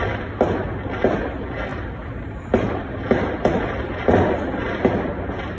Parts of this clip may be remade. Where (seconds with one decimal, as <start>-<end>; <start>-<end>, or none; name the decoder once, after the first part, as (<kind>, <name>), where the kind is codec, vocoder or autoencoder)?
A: 1.7-4.0 (vocoder, BigVGAN v2)